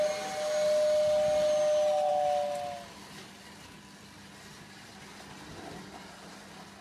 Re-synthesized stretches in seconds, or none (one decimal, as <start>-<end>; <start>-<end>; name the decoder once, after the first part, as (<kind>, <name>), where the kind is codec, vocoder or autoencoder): none